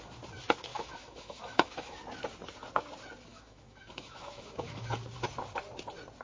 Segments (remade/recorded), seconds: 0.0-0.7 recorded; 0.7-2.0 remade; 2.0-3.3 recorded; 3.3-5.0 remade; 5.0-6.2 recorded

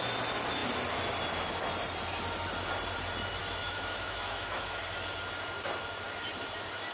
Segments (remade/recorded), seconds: 0.0-3.4 recorded; 3.4-4.8 remade; 4.8-6.9 recorded

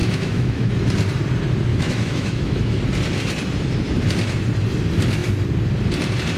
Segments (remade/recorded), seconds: 0.0-0.7 remade; 0.7-1.7 recorded; 1.7-2.8 remade; 2.8-6.4 recorded

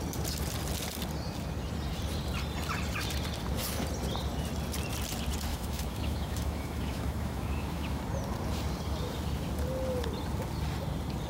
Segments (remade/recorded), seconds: 0.0-5.5 recorded; 5.5-8.0 remade; 8.0-11.3 recorded

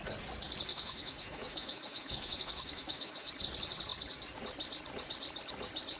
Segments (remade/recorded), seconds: 0.0-0.7 recorded; 0.7-3.3 remade; 3.3-6.0 recorded